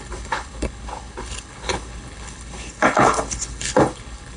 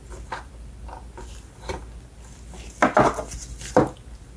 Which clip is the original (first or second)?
second